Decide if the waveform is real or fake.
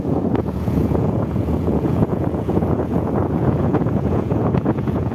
fake